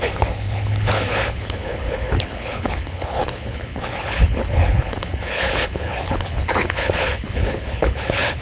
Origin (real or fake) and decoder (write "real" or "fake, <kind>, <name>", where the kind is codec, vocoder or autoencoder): fake, codec, HILCodec